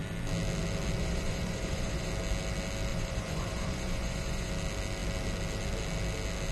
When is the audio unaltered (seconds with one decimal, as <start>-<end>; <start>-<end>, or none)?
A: 0.0-1.0; 2.1-2.9; 4.5-6.5